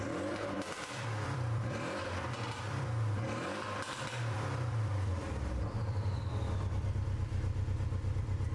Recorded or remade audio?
remade